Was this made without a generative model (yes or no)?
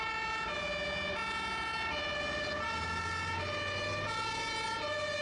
yes